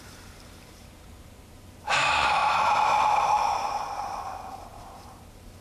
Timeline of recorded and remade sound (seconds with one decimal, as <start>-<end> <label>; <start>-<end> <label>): 0.0-2.4 remade; 2.4-3.0 recorded; 3.0-5.6 remade